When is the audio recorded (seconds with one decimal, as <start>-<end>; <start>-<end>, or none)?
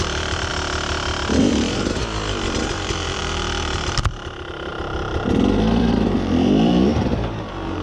0.5-1.4; 2.0-2.6; 4.7-5.8